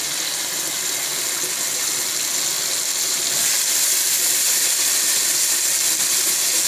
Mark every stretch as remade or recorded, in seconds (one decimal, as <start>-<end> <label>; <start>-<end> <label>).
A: 0.0-6.7 recorded